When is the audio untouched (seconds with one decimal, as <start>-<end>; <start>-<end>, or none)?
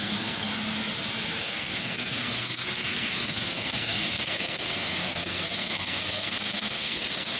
0.5-1.4